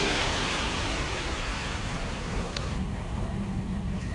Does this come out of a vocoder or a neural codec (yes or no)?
yes